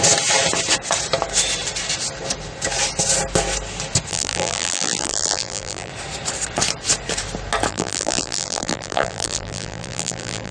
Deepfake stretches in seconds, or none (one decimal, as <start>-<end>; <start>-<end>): 4.1-5.9; 7.7-10.5